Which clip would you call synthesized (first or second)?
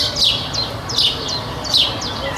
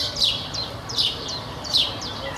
second